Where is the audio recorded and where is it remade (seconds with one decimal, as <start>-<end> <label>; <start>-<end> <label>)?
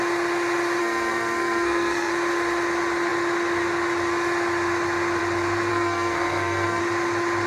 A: 0.0-0.8 recorded; 0.8-2.1 remade; 2.1-5.7 recorded; 5.7-6.8 remade; 6.8-7.5 recorded